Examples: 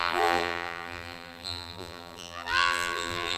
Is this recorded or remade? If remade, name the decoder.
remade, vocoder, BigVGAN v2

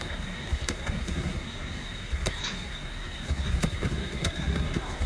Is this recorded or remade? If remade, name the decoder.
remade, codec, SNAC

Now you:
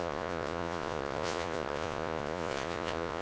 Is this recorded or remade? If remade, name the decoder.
remade, vocoder, Vocos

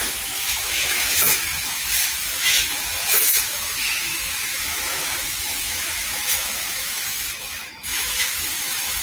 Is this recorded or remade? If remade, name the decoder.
remade, autoencoder, DAC-VAE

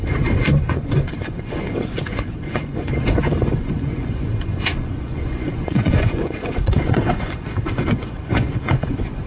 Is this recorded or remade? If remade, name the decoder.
remade, vocoder, Vocos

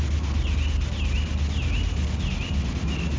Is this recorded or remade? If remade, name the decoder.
recorded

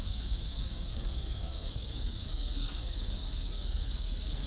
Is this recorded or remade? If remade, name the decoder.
remade, codec, SNAC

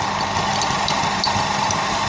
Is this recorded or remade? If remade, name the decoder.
recorded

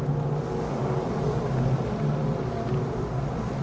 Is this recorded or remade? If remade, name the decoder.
recorded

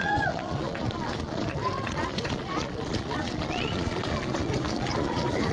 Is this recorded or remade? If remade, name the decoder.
remade, vocoder, Vocos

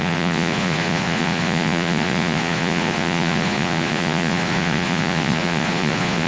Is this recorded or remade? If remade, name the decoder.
remade, vocoder, Vocos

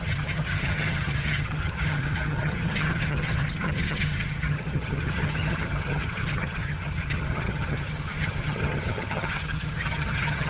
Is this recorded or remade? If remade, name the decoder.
remade, vocoder, HiFi-GAN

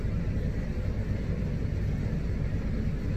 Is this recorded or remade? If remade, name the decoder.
recorded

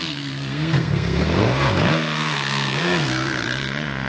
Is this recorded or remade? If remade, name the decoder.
remade, codec, SNAC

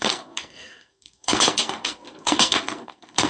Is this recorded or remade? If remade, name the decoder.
remade, codec, SNAC